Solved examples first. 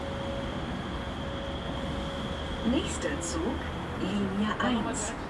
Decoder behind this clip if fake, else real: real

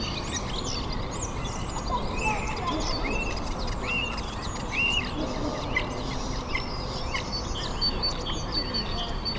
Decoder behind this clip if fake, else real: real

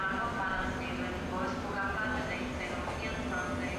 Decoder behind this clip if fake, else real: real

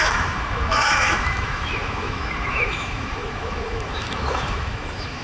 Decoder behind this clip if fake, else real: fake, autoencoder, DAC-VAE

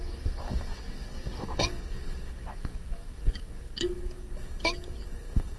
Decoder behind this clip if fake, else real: fake, codec, DAC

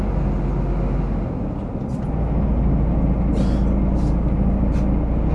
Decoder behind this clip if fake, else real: real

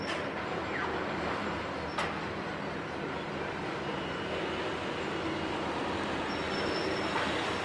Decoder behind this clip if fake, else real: real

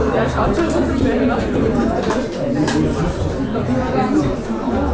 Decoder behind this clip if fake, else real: real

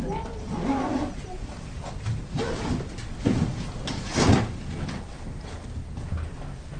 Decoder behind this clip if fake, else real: real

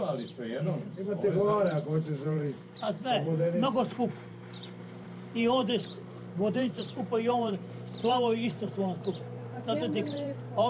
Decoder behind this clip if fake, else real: fake, vocoder, BigVGAN v2